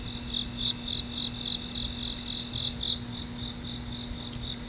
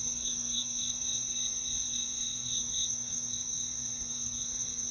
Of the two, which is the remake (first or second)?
second